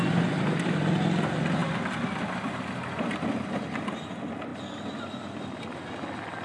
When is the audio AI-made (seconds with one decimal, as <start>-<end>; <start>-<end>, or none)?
none